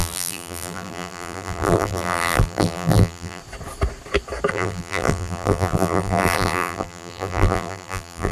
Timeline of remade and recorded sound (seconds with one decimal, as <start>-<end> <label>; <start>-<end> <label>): 0.0-3.4 remade; 3.4-4.5 recorded; 4.5-8.3 remade

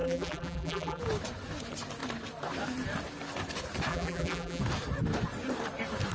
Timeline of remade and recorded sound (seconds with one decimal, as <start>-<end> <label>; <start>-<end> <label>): 0.0-1.0 remade; 1.0-3.9 recorded; 3.9-4.6 remade; 4.6-6.1 recorded

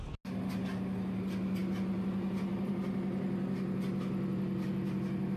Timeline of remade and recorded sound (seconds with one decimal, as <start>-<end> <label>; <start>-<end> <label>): 0.0-5.4 recorded

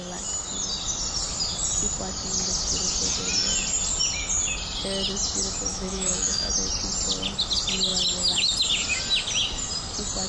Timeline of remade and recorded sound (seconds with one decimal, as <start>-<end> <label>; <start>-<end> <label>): 0.0-5.7 recorded; 5.7-6.5 remade; 6.5-10.3 recorded

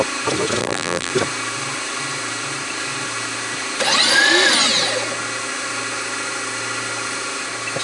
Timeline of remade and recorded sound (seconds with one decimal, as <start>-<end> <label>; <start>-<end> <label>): 0.0-0.6 recorded; 0.6-1.1 remade; 1.1-7.8 recorded

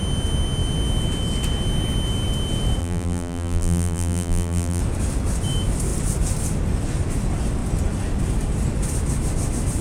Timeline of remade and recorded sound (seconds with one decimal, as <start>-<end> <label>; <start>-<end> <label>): 0.0-2.8 recorded; 2.8-4.8 remade; 4.8-9.8 recorded

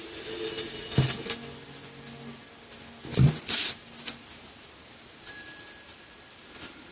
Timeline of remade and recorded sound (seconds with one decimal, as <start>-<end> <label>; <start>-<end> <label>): 0.0-6.9 recorded